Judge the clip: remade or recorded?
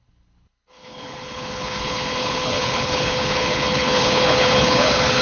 remade